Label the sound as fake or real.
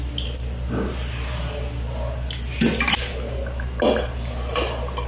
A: real